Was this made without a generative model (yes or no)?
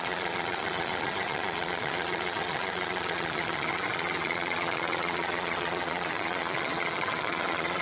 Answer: no